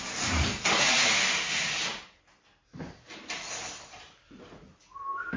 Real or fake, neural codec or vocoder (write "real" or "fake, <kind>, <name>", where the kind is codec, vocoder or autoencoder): real